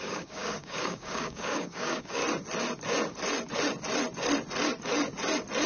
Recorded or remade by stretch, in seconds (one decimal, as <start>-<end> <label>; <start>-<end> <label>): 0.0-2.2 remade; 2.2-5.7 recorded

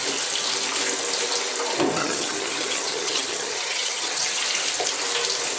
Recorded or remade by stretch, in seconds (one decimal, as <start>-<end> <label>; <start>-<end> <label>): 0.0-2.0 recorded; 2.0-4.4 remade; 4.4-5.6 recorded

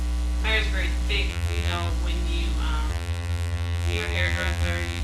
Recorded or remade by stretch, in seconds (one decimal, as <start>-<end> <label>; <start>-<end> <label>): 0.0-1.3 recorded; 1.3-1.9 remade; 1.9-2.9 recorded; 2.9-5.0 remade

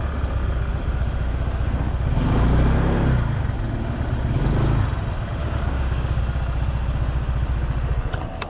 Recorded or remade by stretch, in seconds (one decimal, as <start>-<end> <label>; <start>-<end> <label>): 0.0-5.4 recorded; 5.4-6.2 remade; 6.2-8.5 recorded